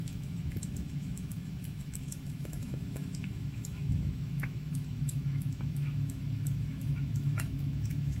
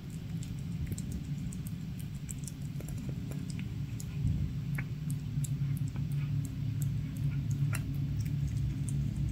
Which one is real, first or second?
second